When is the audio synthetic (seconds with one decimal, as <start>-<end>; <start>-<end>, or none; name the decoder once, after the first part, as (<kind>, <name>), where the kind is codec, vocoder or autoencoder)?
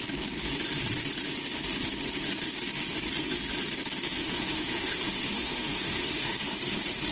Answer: 4.1-6.5 (autoencoder, DAC-VAE)